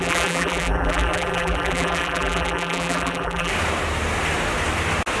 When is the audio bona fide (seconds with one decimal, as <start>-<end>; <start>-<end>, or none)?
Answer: 3.5-5.2